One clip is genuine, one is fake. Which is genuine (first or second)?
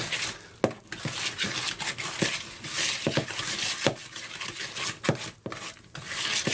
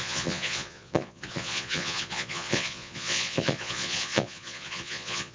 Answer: first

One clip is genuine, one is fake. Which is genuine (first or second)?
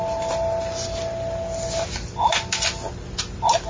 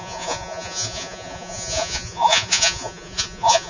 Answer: first